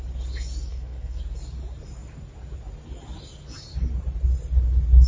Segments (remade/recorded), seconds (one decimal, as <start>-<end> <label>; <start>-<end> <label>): 0.0-0.7 recorded; 0.7-1.2 remade; 1.2-5.1 recorded